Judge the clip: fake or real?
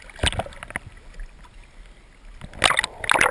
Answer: real